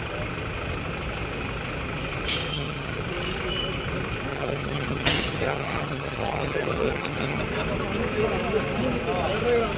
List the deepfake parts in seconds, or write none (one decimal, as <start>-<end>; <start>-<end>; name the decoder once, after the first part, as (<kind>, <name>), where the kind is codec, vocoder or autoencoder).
2.5-3.0 (vocoder, HiFi-GAN); 4.3-7.4